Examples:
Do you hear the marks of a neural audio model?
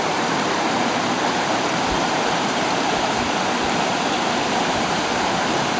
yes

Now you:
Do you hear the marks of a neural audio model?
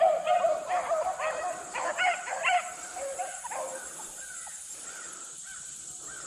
yes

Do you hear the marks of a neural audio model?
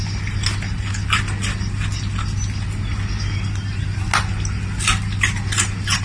no